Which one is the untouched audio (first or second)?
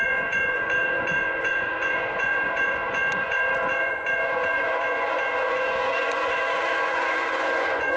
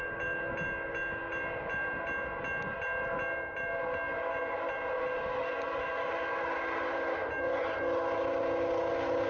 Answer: second